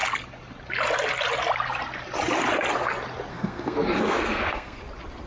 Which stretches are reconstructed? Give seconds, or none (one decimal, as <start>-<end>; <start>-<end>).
3.3-4.8

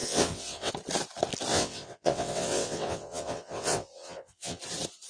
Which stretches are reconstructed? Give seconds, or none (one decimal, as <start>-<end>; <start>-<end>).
0.0-0.7; 1.5-4.6

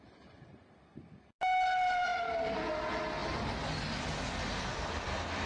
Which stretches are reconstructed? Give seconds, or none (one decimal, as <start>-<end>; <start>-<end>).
none

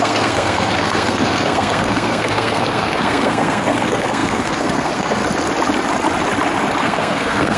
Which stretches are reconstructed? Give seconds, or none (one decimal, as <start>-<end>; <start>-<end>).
0.0-5.2; 6.8-7.6

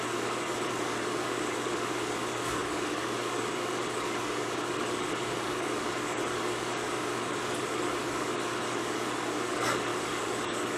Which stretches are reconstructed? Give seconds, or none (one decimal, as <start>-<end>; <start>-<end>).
0.0-10.8

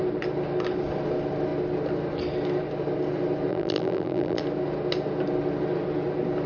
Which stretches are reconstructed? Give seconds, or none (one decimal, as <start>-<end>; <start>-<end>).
3.5-4.4

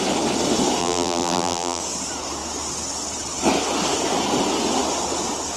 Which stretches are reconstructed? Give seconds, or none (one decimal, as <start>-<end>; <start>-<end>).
0.8-1.8

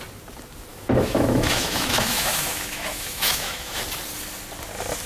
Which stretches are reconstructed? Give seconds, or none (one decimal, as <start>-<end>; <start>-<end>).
0.7-3.8